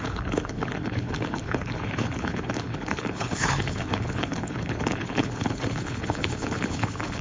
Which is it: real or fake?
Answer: fake